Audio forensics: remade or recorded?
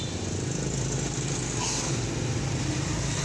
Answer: recorded